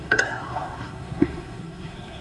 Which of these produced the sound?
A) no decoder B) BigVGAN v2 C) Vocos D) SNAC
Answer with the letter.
D